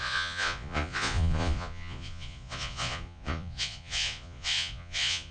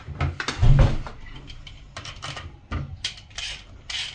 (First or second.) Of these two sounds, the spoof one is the first